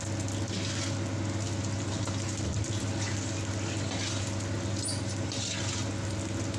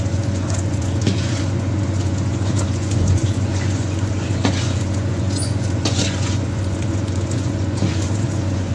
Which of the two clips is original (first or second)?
first